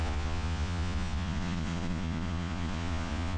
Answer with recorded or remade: remade